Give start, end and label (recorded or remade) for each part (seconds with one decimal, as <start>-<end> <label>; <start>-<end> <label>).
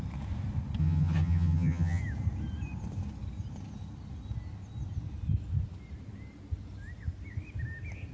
0.0-0.8 recorded; 0.8-2.0 remade; 2.0-8.1 recorded